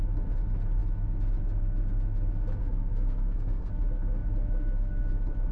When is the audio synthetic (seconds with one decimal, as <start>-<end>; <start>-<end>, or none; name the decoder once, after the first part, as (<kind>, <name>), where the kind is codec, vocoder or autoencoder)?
2.6-3.7 (codec, SNAC)